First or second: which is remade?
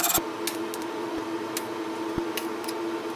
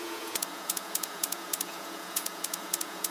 second